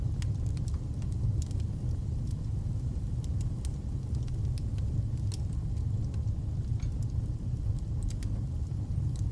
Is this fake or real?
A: real